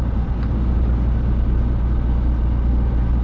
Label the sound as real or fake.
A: real